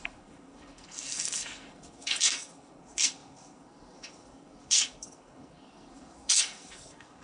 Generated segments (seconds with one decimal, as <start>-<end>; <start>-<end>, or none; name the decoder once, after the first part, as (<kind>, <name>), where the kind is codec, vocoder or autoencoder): 0.0-7.2 (codec, SNAC)